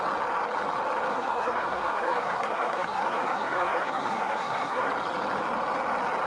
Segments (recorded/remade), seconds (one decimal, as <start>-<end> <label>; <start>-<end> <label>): 0.0-1.1 recorded; 1.1-4.9 remade; 4.9-6.3 recorded